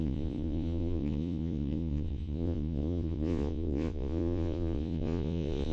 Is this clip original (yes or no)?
no